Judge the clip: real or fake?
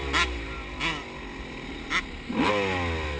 real